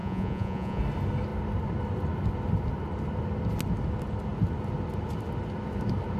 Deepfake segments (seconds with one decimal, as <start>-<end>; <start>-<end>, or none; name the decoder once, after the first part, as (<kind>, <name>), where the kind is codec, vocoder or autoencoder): 0.0-0.8 (vocoder, Vocos)